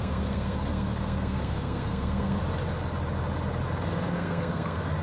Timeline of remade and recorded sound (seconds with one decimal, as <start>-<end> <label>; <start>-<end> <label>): 0.0-2.4 remade; 2.4-4.1 recorded; 4.1-5.0 remade